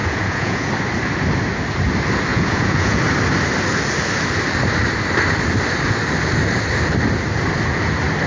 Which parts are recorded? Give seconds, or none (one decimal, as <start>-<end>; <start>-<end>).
0.7-2.3; 3.0-8.3